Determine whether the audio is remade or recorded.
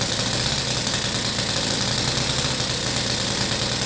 recorded